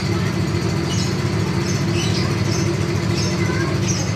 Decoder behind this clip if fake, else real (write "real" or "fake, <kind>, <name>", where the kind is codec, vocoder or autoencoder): real